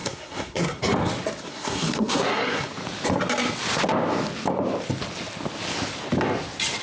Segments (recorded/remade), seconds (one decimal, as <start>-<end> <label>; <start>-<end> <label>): 0.0-0.8 remade; 0.8-1.5 recorded; 1.5-2.7 remade; 2.7-6.8 recorded